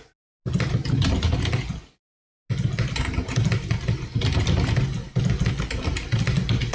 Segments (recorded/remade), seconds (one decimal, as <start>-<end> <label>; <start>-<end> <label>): 0.0-6.7 recorded